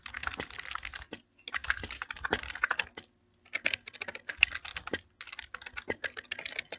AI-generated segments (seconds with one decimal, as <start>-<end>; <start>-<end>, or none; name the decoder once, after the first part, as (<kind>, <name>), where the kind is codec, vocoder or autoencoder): 1.6-2.7 (vocoder, BigVGAN v2)